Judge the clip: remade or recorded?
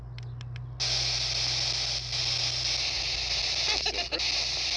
recorded